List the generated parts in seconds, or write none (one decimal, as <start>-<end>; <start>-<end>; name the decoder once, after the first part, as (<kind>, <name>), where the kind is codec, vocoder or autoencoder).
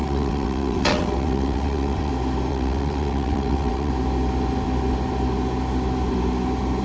0.0-2.1 (vocoder, WaveNeXt); 2.5-3.9